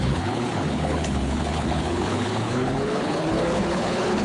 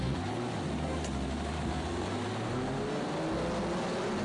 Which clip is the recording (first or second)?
second